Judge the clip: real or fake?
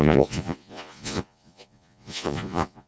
fake